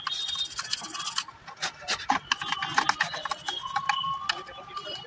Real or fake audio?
real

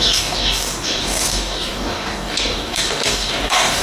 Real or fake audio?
fake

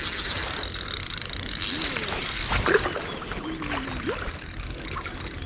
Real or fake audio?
real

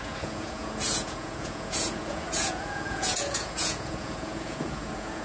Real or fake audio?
fake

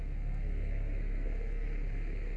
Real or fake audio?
fake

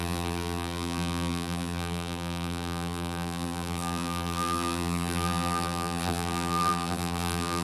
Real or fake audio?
fake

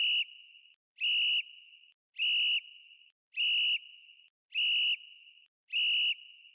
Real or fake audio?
real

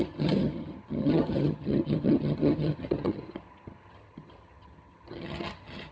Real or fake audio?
fake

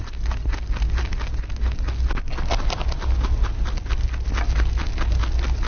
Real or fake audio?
real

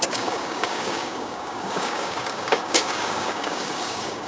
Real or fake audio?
fake